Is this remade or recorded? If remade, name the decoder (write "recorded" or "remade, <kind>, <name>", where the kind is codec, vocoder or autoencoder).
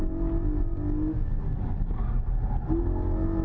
recorded